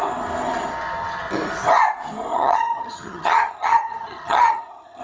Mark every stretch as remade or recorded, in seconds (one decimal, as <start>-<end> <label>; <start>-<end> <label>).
0.0-2.3 recorded; 2.3-5.0 remade